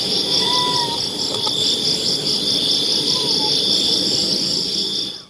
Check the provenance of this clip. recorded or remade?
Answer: recorded